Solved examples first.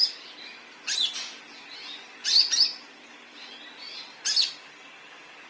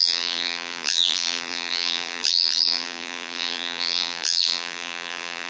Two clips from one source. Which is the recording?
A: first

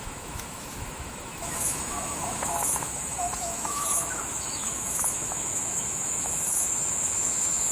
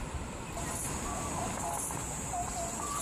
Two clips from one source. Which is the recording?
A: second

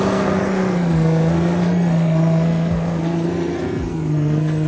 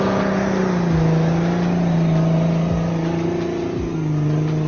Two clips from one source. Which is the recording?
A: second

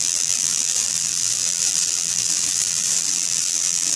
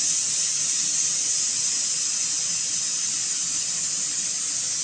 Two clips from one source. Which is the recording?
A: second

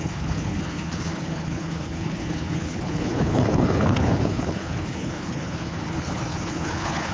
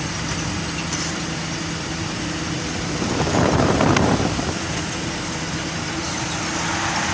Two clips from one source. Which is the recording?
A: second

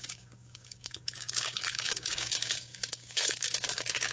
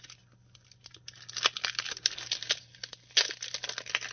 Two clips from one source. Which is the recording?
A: second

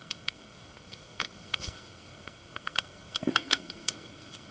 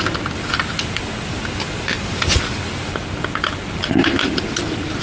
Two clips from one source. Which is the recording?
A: second